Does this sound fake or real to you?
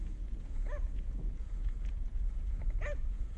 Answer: fake